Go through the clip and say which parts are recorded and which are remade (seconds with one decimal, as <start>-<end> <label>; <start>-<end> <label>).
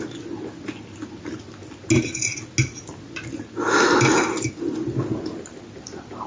0.0-6.3 recorded